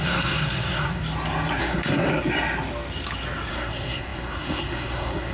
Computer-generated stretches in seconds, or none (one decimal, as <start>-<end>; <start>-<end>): 0.0-1.0; 1.6-2.1; 3.5-5.3